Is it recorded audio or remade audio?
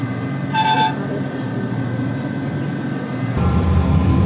recorded